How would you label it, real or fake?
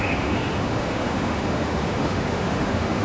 fake